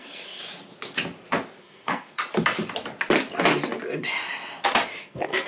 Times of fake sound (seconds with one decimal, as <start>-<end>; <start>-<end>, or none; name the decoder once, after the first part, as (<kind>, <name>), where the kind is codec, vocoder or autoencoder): 0.0-0.4 (codec, SNAC); 1.6-2.2; 5.0-5.5